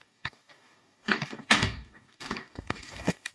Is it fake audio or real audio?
fake